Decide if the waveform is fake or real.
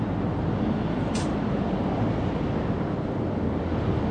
real